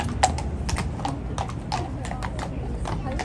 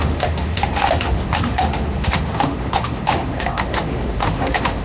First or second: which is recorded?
first